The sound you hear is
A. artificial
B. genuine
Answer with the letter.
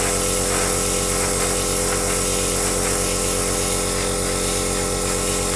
B